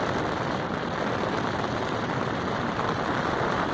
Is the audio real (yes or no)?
no